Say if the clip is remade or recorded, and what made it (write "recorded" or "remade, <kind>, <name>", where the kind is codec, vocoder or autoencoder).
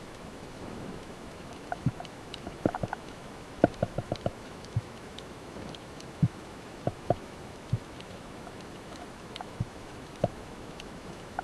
remade, autoencoder, DAC-VAE